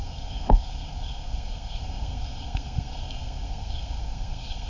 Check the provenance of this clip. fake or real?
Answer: fake